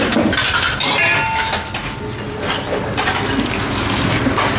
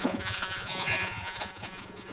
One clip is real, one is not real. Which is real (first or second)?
first